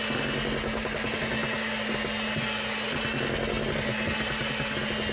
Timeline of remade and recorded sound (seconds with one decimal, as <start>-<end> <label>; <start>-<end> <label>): 0.0-5.1 recorded